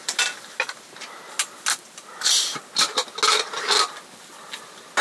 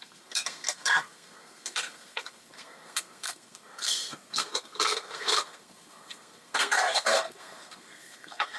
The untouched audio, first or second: first